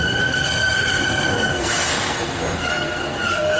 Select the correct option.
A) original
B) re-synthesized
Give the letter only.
B